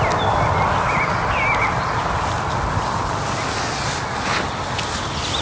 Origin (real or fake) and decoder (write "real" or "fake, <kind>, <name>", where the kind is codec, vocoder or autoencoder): real